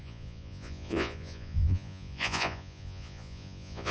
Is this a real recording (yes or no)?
no